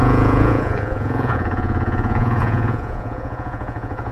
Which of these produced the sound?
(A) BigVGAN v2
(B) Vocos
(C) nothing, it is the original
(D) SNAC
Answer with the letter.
B